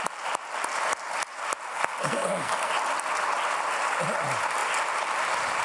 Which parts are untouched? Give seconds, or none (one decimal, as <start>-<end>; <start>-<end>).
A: 0.0-1.7; 2.7-5.6